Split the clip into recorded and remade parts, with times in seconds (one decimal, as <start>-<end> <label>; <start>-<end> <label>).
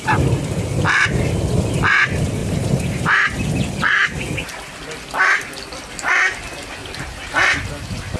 0.0-2.4 recorded; 2.4-3.5 remade; 3.5-6.8 recorded; 6.8-7.5 remade; 7.5-8.2 recorded